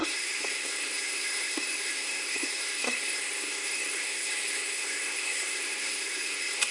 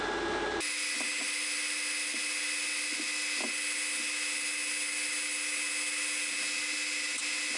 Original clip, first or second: second